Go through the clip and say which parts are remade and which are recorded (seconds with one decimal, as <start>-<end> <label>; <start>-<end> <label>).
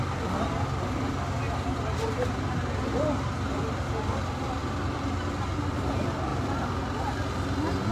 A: 0.0-6.3 recorded; 6.3-7.0 remade; 7.0-7.9 recorded